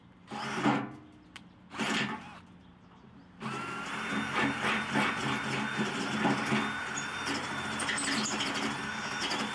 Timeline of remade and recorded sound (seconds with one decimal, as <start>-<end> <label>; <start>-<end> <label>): 0.0-9.5 recorded